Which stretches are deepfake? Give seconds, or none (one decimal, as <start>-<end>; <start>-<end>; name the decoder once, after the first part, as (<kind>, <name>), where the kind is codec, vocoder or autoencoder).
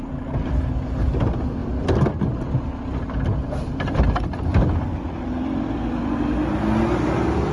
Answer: 1.6-6.1 (vocoder, BigVGAN v2)